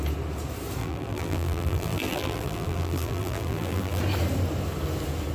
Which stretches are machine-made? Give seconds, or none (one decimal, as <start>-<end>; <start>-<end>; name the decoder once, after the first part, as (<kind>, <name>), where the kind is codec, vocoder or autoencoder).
0.8-4.0 (vocoder, BigVGAN v2)